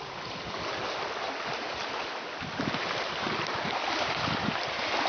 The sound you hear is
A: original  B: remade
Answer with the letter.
A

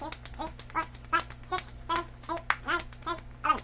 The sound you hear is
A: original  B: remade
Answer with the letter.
A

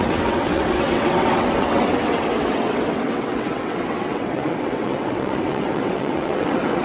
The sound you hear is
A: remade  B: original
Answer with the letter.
A